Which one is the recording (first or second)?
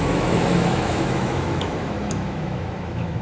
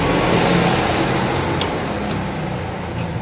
second